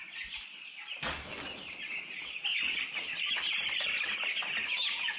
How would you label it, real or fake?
real